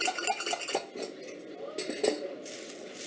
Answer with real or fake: real